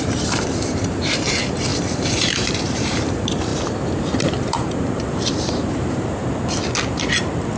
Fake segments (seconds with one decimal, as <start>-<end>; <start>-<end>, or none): 0.0-3.5; 4.3-6.2